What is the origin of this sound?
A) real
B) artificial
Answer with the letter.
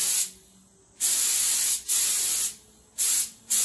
A